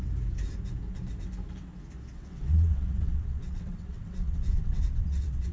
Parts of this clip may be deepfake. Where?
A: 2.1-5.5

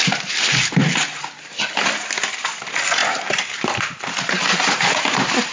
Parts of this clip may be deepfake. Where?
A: none

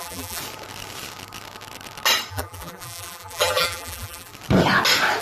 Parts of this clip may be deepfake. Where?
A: 0.0-0.4; 2.3-4.3

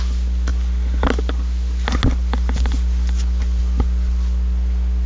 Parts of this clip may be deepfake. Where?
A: none